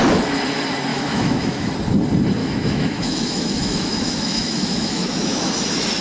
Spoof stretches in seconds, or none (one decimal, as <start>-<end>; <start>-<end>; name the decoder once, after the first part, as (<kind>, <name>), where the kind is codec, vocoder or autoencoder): 0.9-1.7 (autoencoder, DAC-VAE); 2.4-5.4